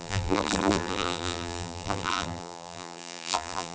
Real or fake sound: fake